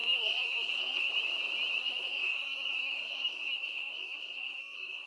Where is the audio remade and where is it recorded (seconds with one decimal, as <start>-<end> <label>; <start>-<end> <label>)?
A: 0.0-1.1 remade; 1.1-1.8 recorded; 1.8-5.1 remade